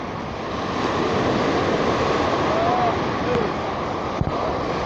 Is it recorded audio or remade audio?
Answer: recorded